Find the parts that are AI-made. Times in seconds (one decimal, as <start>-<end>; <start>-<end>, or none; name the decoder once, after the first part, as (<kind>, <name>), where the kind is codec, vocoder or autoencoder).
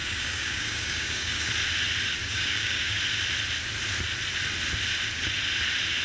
0.0-1.5 (codec, DAC); 2.2-3.0